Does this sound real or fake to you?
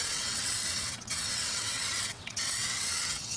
fake